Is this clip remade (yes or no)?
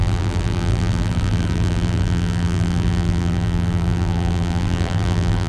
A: yes